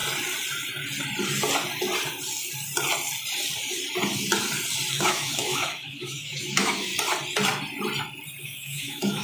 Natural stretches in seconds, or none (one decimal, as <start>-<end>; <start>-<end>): 0.0-4.9; 6.9-8.4